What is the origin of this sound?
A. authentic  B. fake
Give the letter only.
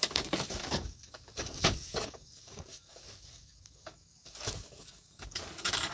B